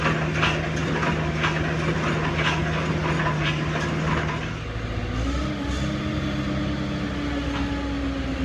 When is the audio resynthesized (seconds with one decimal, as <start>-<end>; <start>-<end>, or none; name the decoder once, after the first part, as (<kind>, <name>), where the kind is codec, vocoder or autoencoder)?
none